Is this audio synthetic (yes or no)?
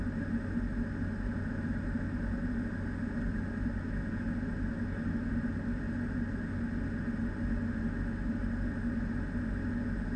no